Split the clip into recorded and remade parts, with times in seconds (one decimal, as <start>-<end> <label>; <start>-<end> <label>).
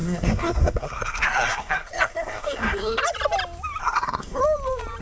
0.0-3.0 remade; 3.0-3.8 recorded; 3.8-4.4 remade; 4.4-5.0 recorded